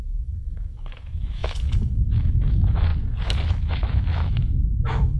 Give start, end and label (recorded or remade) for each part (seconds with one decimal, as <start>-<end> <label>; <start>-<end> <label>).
0.0-2.9 remade; 2.9-3.5 recorded; 3.5-5.2 remade